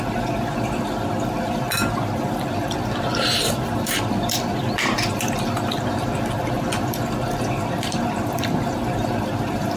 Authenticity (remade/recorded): remade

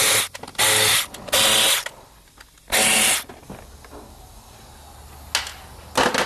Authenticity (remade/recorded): recorded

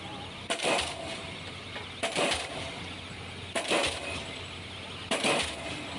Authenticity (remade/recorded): recorded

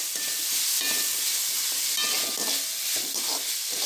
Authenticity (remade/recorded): recorded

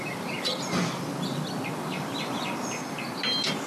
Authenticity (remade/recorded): remade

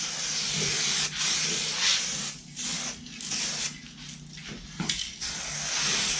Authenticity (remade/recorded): recorded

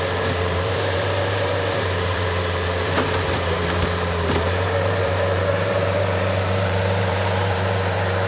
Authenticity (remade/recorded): remade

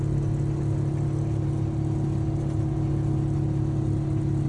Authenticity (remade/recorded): recorded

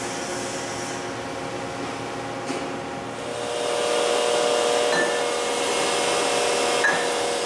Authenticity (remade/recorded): recorded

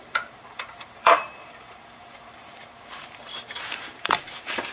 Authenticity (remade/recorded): remade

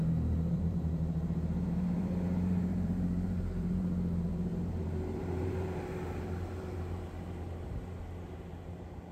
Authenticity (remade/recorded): remade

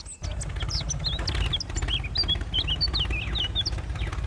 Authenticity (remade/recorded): recorded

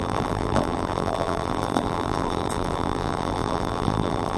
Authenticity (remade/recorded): remade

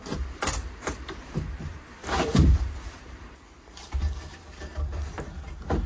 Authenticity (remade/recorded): remade